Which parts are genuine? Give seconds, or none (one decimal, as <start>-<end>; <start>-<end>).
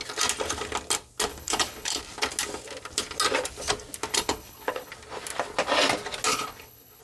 0.0-1.3; 2.0-4.1; 4.9-6.3